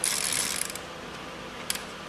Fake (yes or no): no